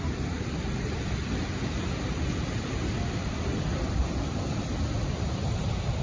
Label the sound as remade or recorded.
remade